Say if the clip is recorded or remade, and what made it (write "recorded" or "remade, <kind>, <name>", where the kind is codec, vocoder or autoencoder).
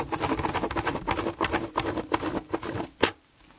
recorded